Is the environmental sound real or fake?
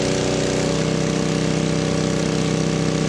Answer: real